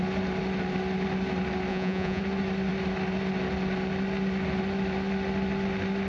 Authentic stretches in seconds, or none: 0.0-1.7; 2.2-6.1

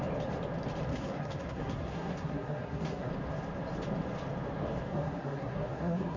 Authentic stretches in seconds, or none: 0.0-0.9; 3.1-4.9